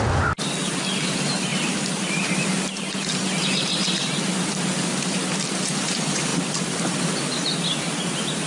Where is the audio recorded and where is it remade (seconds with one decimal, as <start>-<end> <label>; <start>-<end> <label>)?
0.0-1.5 recorded; 1.5-5.6 remade; 5.6-6.3 recorded; 6.3-7.1 remade; 7.1-8.5 recorded